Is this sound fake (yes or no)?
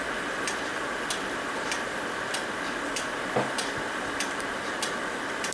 yes